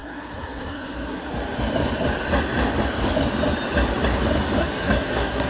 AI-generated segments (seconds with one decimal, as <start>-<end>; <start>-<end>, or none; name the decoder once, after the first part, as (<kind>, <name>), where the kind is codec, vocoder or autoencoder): 0.0-1.3 (codec, SNAC); 4.6-5.5